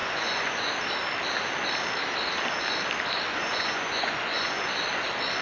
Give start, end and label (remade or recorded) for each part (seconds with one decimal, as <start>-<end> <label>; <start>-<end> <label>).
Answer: 0.0-0.7 remade; 0.7-3.3 recorded; 3.3-4.6 remade; 4.6-5.4 recorded